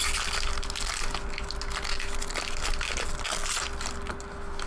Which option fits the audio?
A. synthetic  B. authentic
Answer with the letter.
B